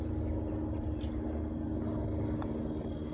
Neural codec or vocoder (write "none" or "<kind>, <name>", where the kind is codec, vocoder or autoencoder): none